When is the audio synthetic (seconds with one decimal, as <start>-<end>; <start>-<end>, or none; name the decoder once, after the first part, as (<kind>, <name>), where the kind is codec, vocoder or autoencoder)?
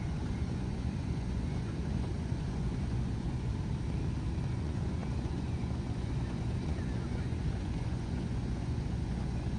0.0-3.5 (vocoder, Vocos); 4.5-9.6